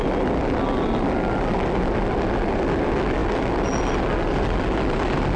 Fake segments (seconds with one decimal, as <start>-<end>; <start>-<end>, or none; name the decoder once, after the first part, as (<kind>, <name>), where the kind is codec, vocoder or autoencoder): none